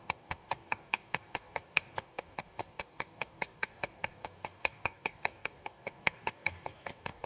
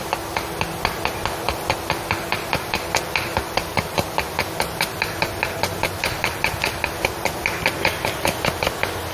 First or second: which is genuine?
second